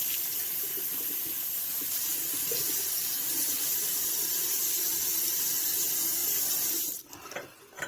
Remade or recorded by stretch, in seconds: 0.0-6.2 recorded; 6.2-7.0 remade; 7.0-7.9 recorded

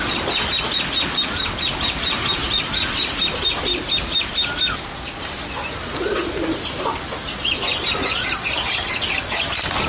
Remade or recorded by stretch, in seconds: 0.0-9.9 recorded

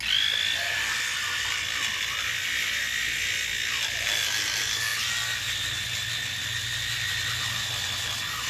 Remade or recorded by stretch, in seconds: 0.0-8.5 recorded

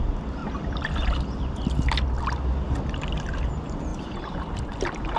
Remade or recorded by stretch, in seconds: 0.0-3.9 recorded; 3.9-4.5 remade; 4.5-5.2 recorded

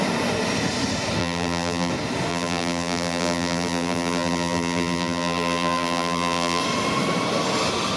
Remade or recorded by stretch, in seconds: 0.0-1.2 recorded; 1.2-1.9 remade; 1.9-2.3 recorded; 2.3-6.6 remade; 6.6-8.0 recorded

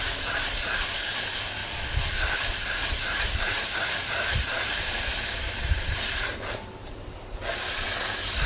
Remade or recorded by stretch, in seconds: 0.0-2.8 recorded; 2.8-7.3 remade; 7.3-8.5 recorded